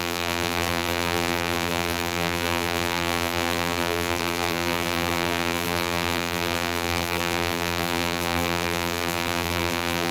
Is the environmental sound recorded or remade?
remade